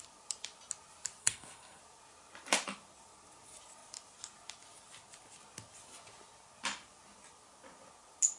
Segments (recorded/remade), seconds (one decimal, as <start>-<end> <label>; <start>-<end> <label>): 0.0-1.2 recorded; 1.2-1.8 remade; 1.8-8.4 recorded

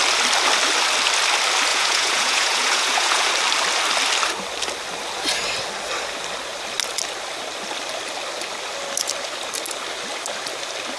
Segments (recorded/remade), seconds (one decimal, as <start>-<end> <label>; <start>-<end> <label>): 0.0-1.7 recorded; 1.7-3.3 remade; 3.3-11.0 recorded

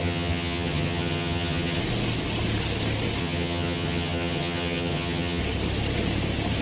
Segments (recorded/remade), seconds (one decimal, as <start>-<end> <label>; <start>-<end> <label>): 0.0-1.8 remade; 1.8-3.2 recorded; 3.2-5.4 remade; 5.4-6.6 recorded

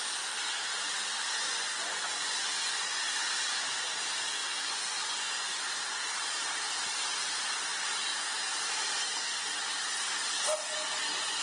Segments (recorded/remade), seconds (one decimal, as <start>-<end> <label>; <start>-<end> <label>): 0.0-1.5 recorded; 1.5-3.0 remade; 3.0-4.4 recorded; 4.4-5.7 remade; 5.7-11.4 recorded

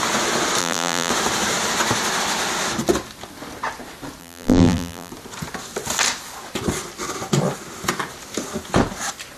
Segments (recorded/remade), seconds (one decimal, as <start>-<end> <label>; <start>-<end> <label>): 0.0-0.6 recorded; 0.6-1.1 remade; 1.1-4.2 recorded; 4.2-5.1 remade; 5.1-9.4 recorded

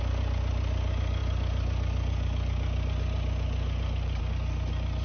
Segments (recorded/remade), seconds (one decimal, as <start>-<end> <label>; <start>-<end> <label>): 0.0-5.0 recorded

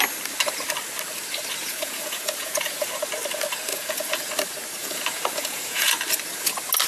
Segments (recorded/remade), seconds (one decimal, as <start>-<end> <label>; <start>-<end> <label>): 0.0-1.6 recorded; 1.6-2.9 remade; 2.9-3.7 recorded; 3.7-4.3 remade; 4.3-4.8 recorded; 4.8-5.9 remade; 5.9-6.9 recorded

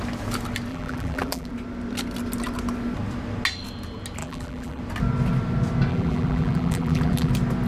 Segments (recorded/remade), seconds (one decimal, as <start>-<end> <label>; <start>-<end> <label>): 0.0-0.7 recorded; 0.7-1.5 remade; 1.5-4.2 recorded; 4.2-4.8 remade; 4.8-5.9 recorded; 5.9-7.3 remade; 7.3-7.7 recorded